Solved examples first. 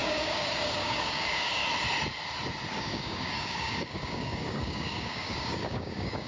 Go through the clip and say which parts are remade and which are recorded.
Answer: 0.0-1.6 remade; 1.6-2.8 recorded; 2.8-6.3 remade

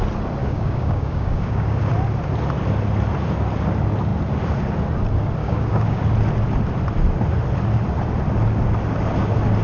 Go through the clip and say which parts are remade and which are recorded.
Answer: 0.0-0.4 recorded; 0.4-1.9 remade; 1.9-5.4 recorded; 5.4-6.0 remade; 6.0-9.6 recorded

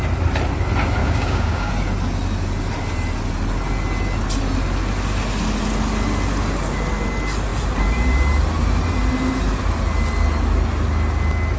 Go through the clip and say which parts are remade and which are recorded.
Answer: 0.0-1.0 recorded; 1.0-1.7 remade; 1.7-11.6 recorded

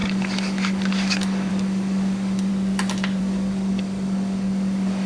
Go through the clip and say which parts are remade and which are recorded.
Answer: 0.0-2.5 remade; 2.5-3.2 recorded; 3.2-5.1 remade